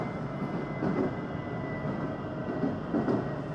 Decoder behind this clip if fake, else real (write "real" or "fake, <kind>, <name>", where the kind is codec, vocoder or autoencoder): real